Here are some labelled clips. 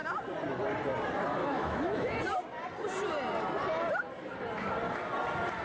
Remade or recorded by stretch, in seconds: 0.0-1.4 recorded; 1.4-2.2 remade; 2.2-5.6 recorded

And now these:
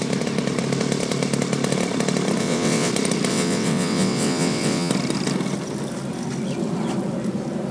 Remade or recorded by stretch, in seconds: 0.0-2.4 recorded; 2.4-2.9 remade; 2.9-3.3 recorded; 3.3-4.9 remade; 4.9-7.7 recorded

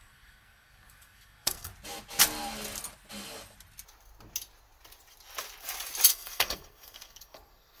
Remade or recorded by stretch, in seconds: 0.0-1.7 remade; 1.7-6.1 recorded; 6.1-7.8 remade

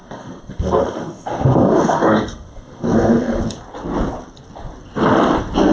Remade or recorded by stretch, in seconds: 0.0-3.4 remade; 3.4-5.7 recorded

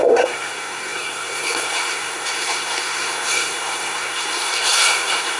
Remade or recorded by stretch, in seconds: 0.0-5.4 remade